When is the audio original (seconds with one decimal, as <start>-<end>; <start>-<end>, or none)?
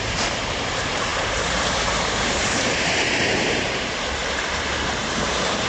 4.2-5.0